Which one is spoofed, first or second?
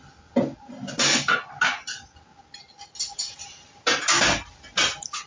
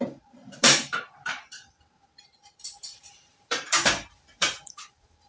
second